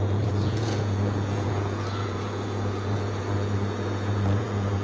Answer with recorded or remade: remade